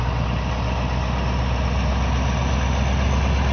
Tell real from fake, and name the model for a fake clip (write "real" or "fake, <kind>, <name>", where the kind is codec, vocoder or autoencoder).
real